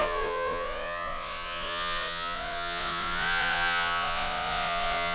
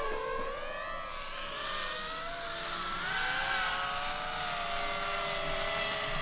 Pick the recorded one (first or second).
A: second